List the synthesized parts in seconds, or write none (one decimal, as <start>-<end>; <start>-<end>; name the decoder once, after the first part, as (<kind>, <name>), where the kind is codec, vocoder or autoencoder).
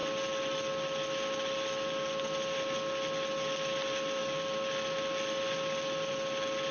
none